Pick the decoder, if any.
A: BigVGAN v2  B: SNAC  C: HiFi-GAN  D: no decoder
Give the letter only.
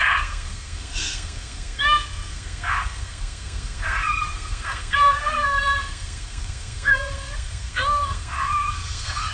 B